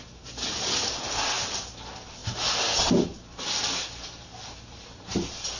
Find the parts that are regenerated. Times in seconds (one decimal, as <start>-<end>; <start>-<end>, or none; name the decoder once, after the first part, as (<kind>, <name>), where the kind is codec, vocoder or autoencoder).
none